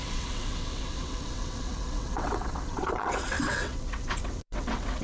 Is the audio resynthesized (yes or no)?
yes